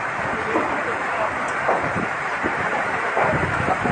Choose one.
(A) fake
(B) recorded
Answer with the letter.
A